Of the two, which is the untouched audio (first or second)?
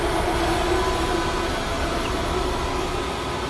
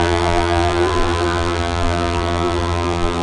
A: first